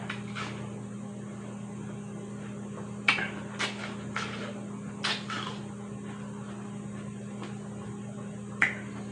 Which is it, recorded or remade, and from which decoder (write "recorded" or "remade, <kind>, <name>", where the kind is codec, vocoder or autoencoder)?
recorded